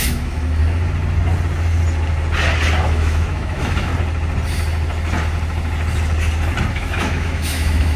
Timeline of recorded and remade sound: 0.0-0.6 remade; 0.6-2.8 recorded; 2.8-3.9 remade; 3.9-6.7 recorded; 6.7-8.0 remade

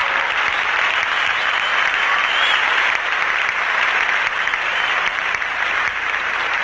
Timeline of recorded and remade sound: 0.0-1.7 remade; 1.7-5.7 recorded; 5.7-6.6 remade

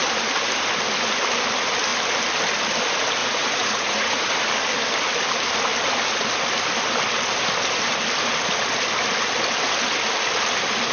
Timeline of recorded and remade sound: 0.0-3.2 recorded; 3.2-4.3 remade; 4.3-10.9 recorded

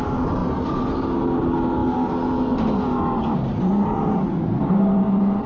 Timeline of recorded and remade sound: 0.0-5.5 recorded

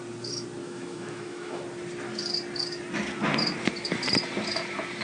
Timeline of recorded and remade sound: 0.0-0.6 recorded; 0.6-1.6 remade; 1.6-5.0 recorded

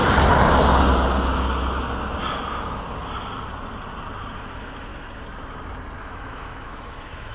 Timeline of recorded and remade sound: 0.0-4.4 recorded; 4.4-4.9 remade; 4.9-6.0 recorded; 6.0-7.3 remade